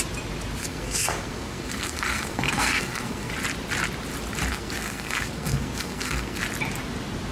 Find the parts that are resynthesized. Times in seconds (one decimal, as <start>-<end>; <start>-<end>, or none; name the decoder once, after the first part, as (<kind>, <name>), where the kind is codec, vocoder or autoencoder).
0.6-3.3 (codec, SNAC); 4.5-6.4